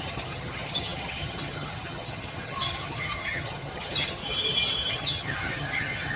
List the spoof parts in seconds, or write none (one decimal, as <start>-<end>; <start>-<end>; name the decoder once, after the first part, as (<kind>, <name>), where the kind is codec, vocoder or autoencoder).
0.0-4.2 (vocoder, HiFi-GAN); 4.9-6.2